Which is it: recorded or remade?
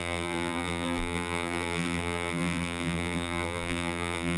remade